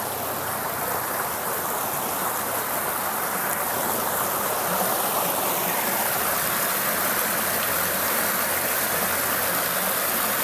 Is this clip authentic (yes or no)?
yes